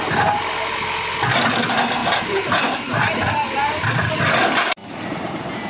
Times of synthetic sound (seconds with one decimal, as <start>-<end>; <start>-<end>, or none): 2.0-4.2; 4.8-5.3